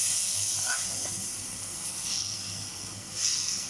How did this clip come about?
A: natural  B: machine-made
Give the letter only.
B